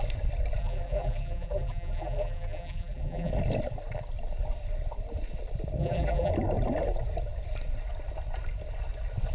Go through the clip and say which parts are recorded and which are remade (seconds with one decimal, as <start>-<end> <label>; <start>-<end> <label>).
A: 0.0-0.6 recorded; 0.6-3.3 remade; 3.3-5.8 recorded; 5.8-6.3 remade; 6.3-9.3 recorded